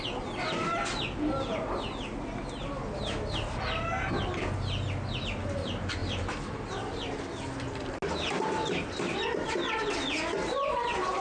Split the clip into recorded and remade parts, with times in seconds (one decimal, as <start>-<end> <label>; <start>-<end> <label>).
0.0-6.0 recorded; 6.0-7.2 remade; 7.2-11.2 recorded